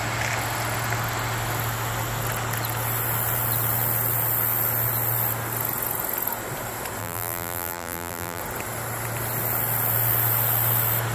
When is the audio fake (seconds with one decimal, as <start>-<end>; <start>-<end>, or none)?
7.0-8.4